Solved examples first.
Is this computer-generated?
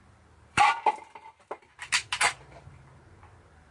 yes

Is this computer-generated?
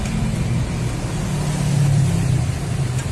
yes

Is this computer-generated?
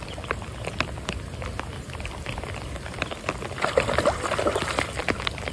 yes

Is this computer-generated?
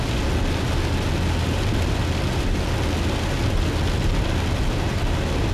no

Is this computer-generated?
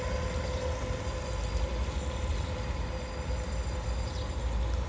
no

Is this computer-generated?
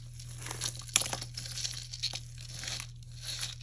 no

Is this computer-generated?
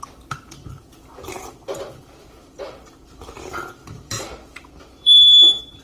yes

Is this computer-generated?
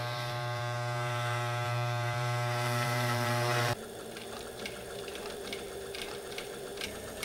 yes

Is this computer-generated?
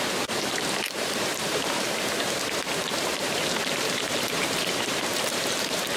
yes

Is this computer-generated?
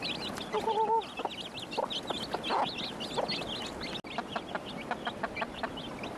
no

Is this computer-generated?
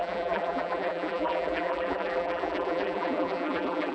yes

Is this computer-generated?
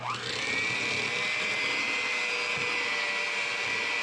no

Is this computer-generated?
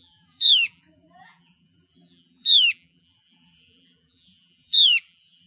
yes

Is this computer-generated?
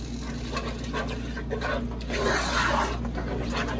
no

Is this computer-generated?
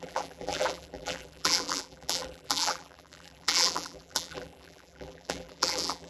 yes